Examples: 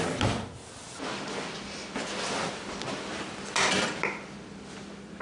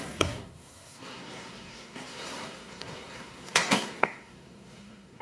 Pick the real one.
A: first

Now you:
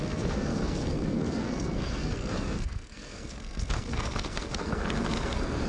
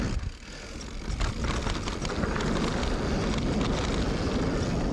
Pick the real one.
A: second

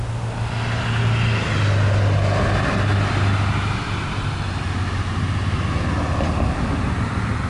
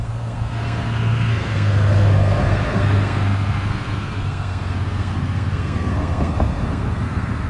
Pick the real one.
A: first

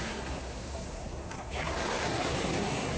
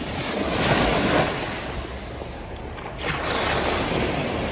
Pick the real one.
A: second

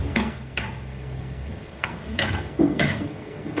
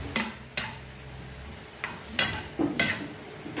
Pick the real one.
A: second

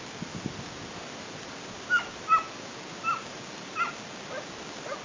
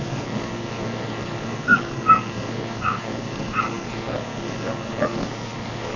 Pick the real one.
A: first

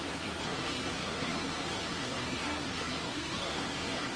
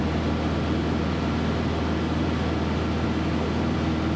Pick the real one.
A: second